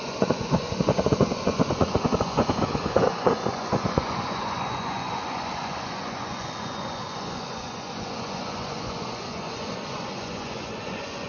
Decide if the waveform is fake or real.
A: fake